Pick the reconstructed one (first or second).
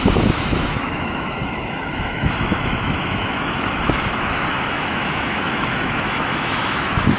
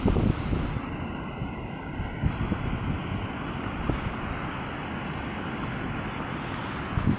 first